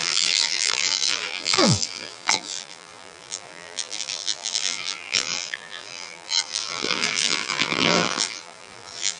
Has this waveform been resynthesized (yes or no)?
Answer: yes